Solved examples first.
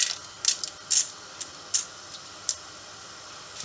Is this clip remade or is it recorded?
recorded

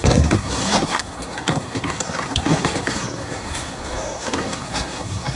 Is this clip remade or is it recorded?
remade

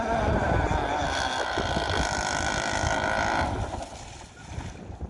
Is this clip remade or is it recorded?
recorded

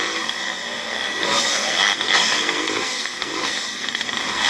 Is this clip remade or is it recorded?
remade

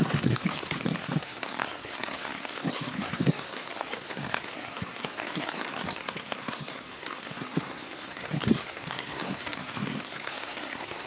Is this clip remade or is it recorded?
remade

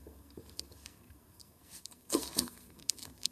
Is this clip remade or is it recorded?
remade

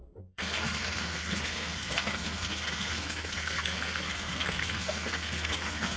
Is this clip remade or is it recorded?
remade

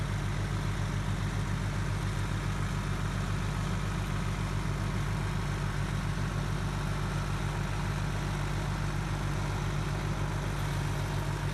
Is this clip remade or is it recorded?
recorded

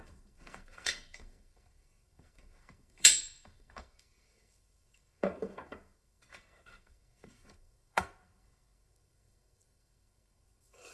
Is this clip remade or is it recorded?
remade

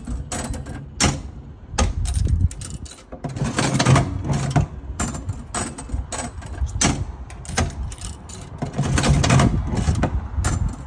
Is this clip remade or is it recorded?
recorded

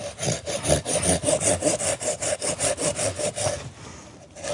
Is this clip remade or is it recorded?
recorded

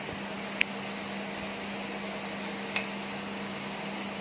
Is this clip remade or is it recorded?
recorded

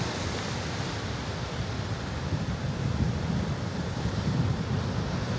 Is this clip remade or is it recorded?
recorded